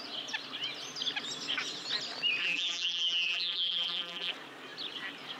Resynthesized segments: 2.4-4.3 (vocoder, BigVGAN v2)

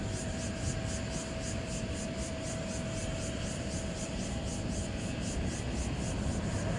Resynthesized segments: 1.2-4.3 (vocoder, BigVGAN v2)

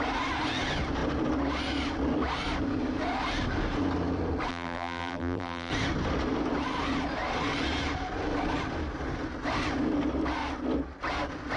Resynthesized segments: 4.5-5.7 (vocoder, BigVGAN v2)

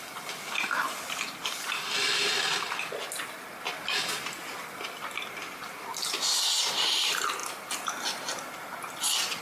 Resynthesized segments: none

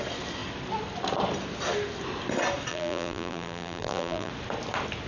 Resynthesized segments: 2.7-4.3 (vocoder, BigVGAN v2)

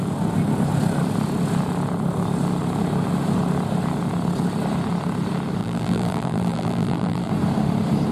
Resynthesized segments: 5.6-7.3 (vocoder, BigVGAN v2)